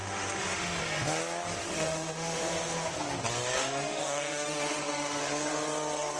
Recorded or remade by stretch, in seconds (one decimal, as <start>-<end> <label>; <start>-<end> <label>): 0.0-0.8 remade; 0.8-1.6 recorded; 1.6-2.4 remade; 2.4-3.6 recorded; 3.6-5.2 remade; 5.2-6.2 recorded